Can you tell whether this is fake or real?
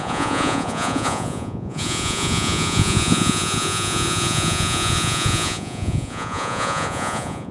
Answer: fake